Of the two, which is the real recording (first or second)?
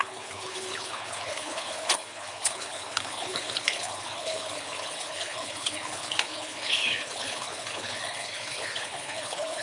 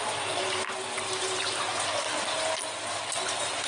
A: second